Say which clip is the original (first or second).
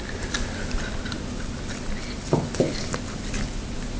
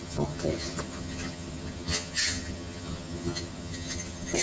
first